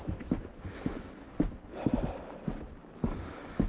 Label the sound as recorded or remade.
recorded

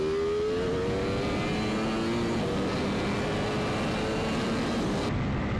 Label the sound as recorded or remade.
recorded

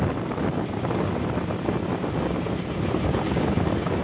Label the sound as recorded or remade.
recorded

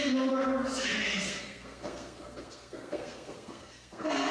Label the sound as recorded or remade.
remade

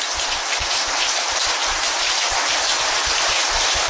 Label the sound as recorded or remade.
recorded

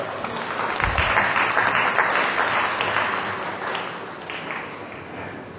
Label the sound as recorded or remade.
recorded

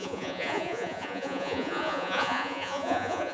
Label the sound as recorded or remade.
remade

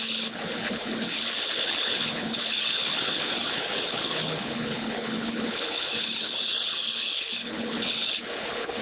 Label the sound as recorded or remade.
remade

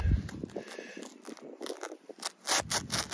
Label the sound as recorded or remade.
recorded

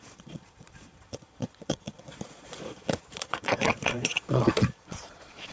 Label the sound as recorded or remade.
remade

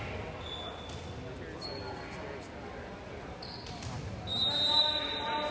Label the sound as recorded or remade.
recorded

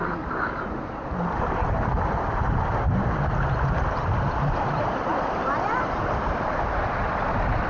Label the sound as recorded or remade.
recorded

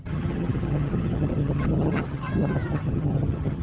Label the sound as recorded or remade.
remade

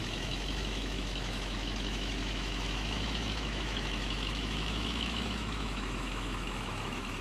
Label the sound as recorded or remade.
remade